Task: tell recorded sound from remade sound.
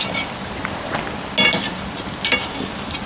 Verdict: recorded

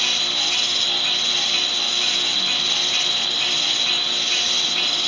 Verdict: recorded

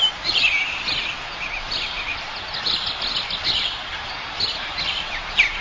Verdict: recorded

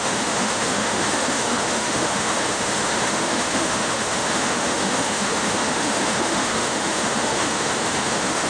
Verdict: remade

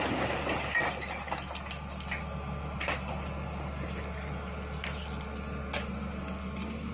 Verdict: recorded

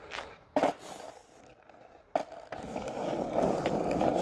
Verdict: recorded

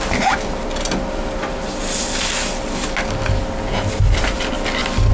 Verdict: recorded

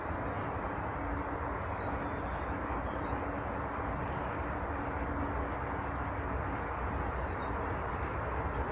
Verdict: recorded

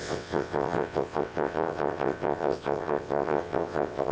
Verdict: remade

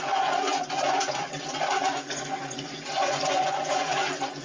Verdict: remade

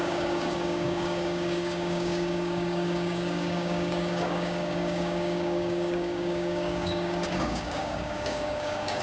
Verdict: remade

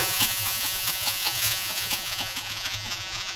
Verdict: remade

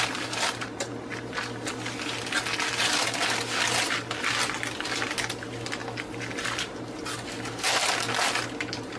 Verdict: recorded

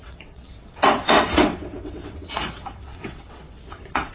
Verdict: remade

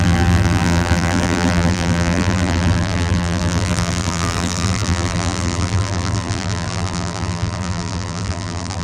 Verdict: remade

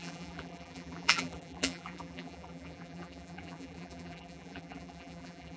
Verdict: remade